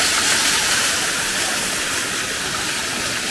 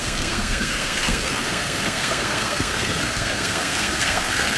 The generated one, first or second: second